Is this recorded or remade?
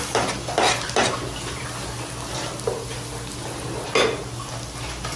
recorded